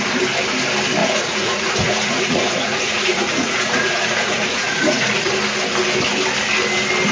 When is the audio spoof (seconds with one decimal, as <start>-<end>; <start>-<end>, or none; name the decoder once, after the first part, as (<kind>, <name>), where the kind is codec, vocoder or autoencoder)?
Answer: 1.0-5.3 (vocoder, Vocos)